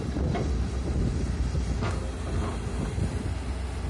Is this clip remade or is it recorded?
recorded